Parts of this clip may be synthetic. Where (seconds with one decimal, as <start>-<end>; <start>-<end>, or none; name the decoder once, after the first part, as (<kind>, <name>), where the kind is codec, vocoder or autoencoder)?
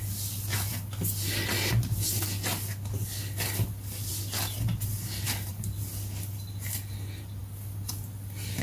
none